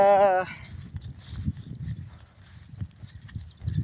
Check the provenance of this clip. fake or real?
real